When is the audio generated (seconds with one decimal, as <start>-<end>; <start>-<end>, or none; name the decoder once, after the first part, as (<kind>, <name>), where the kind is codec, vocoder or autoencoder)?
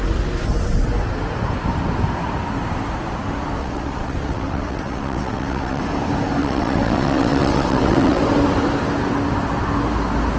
3.6-5.8 (vocoder, WaveNeXt); 6.4-8.2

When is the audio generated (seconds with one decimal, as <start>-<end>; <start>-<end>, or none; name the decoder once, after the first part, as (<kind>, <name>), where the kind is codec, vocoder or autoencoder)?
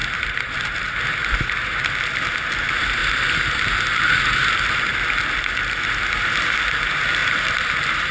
7.2-8.1 (vocoder, BigVGAN v2)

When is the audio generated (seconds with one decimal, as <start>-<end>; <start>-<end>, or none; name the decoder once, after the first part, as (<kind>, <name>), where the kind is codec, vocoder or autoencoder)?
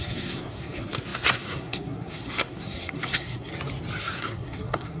0.0-3.5 (codec, SNAC); 4.0-5.0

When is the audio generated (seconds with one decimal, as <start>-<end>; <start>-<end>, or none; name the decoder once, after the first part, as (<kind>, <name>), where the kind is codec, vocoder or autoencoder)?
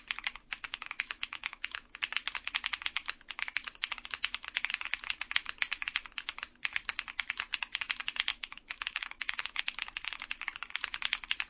0.7-2.0 (autoencoder, DAC-VAE); 8.3-9.6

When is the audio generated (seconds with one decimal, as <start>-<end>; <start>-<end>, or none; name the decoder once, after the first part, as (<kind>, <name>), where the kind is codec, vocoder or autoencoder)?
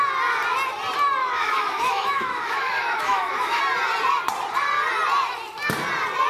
1.2-3.6 (autoencoder, DAC-VAE)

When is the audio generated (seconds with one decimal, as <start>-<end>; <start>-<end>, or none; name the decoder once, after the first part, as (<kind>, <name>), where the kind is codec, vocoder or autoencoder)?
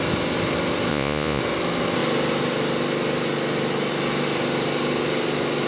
0.9-1.4 (vocoder, Vocos)